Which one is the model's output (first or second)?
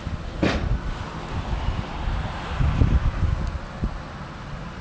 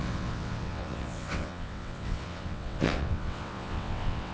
second